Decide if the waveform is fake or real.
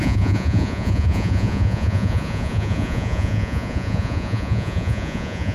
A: fake